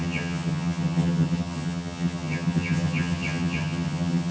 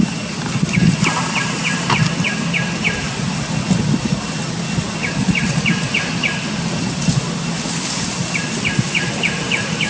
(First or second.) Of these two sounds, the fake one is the first